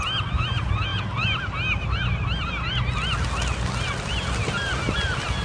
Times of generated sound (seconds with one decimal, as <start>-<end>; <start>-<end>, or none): none